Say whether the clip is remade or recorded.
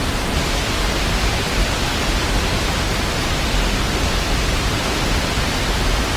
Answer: recorded